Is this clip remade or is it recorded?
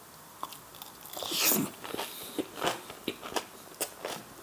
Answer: recorded